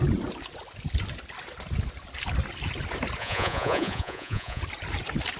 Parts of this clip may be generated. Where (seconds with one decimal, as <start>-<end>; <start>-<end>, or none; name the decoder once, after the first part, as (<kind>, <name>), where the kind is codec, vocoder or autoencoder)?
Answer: 3.2-4.6 (vocoder, Vocos)